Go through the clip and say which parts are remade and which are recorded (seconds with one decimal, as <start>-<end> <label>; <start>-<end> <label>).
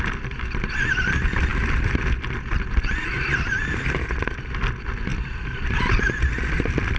0.0-7.0 recorded